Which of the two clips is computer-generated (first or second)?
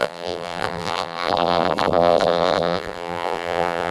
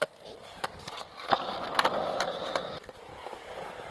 first